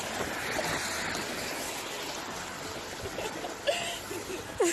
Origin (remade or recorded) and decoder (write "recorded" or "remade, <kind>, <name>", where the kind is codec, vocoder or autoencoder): recorded